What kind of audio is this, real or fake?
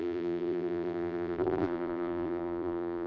fake